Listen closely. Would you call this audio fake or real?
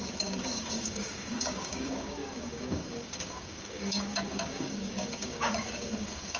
fake